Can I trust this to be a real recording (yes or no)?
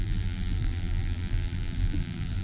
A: no